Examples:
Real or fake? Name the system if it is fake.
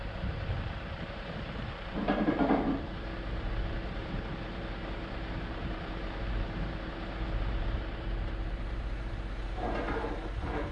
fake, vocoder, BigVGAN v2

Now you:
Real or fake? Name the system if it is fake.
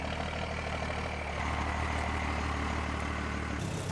real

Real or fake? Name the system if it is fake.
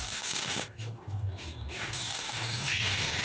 fake, codec, DAC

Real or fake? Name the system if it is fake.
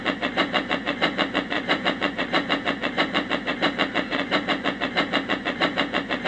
fake, vocoder, Vocos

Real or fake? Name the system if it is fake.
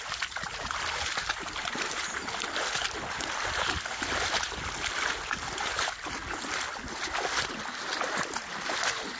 real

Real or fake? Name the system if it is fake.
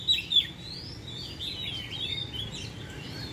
real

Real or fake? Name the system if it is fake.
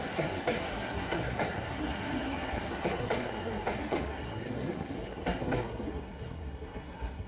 fake, codec, SNAC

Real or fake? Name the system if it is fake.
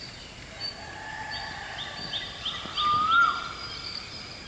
real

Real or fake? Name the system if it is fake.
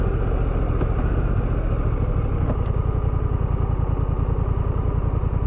real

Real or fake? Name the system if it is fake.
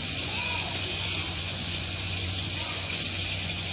fake, vocoder, Vocos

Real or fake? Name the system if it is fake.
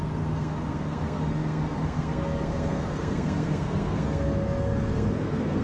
fake, codec, SNAC